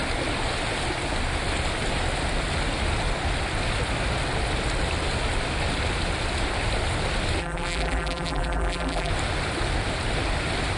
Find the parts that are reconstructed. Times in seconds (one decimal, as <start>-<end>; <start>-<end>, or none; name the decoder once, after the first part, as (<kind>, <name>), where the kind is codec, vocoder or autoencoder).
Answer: 7.4-9.1 (vocoder, BigVGAN v2)